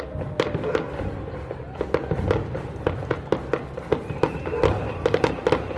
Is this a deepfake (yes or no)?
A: no